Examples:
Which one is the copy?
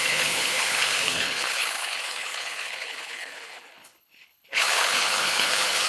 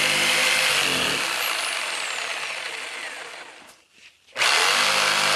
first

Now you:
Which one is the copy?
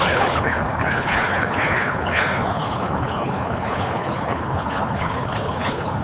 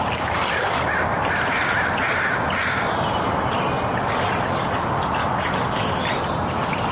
first